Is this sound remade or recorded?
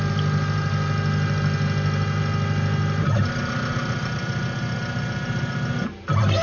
recorded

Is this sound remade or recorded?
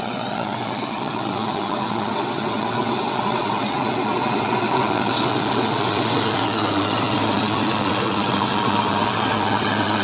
remade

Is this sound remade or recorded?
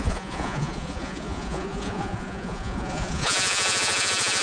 remade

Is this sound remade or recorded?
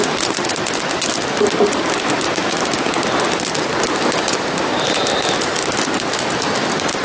recorded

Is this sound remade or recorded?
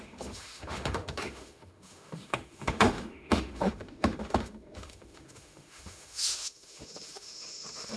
remade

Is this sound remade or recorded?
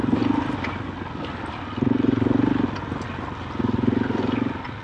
recorded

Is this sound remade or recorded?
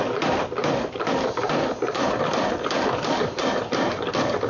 recorded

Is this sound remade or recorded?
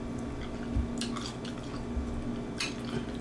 recorded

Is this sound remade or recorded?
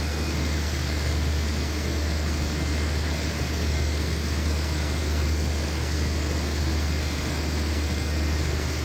remade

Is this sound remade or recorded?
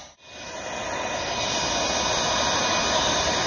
recorded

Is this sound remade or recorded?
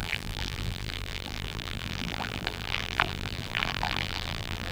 remade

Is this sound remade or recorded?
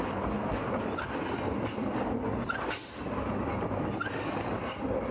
recorded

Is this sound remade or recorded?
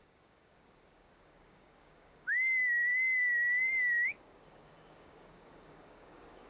remade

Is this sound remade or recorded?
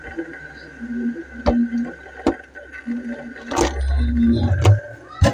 recorded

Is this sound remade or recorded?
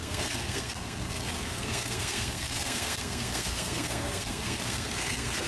remade